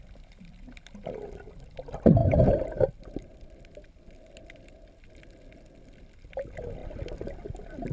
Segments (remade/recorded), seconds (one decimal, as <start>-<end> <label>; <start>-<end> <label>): 0.0-2.2 recorded; 2.2-5.0 remade; 5.0-7.9 recorded